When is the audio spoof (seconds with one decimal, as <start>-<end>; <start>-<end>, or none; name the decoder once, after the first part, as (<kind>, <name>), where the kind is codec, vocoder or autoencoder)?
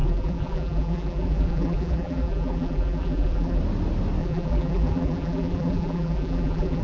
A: 0.0-3.6 (vocoder, BigVGAN v2); 4.2-6.8